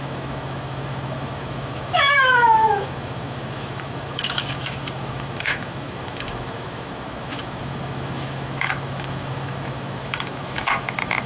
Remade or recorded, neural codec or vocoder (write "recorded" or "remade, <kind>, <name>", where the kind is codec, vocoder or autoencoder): remade, autoencoder, DAC-VAE